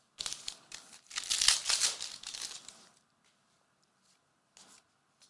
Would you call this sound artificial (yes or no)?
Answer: no